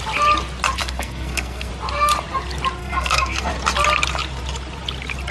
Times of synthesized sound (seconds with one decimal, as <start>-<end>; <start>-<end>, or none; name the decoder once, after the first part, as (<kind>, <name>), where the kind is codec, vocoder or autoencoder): 0.8-1.7 (codec, SNAC); 2.8-3.5